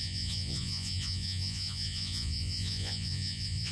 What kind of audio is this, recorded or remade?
remade